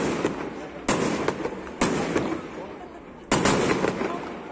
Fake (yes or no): no